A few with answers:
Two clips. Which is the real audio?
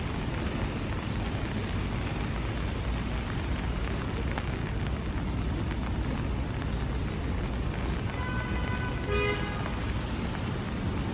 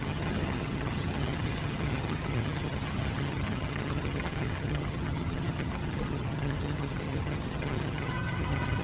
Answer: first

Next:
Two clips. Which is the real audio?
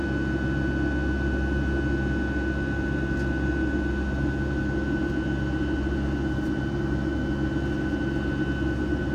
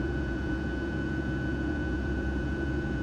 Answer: first